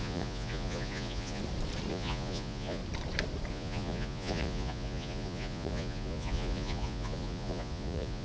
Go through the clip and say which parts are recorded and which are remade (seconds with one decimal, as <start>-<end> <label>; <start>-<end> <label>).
0.0-1.4 remade; 1.4-1.9 recorded; 1.9-2.8 remade; 2.8-3.5 recorded; 3.5-8.2 remade